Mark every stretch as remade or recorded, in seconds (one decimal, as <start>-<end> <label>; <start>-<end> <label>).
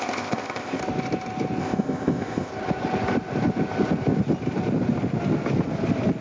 0.0-0.8 remade; 0.8-1.6 recorded; 1.6-2.5 remade; 2.5-6.2 recorded